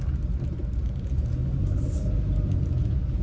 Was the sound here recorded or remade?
recorded